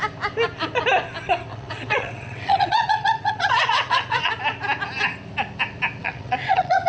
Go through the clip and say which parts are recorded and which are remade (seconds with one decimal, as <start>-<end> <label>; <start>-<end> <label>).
0.0-1.5 recorded; 1.5-4.3 remade; 4.3-6.0 recorded; 6.0-6.9 remade